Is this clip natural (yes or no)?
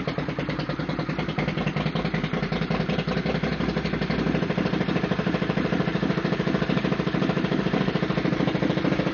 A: no